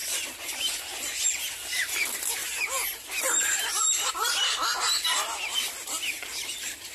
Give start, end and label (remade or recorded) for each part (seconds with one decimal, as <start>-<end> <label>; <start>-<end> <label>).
0.0-6.9 recorded